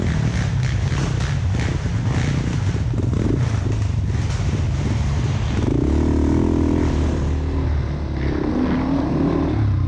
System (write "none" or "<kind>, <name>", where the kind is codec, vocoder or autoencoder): none